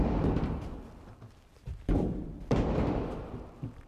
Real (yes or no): no